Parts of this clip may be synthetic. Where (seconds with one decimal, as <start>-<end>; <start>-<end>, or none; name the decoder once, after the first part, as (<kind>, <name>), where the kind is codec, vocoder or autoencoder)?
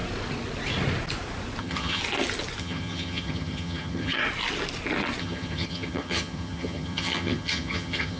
1.6-2.0 (vocoder, HiFi-GAN); 2.6-4.2; 5.2-8.2